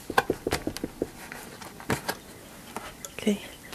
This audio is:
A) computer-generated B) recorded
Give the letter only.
B